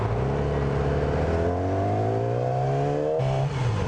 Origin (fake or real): real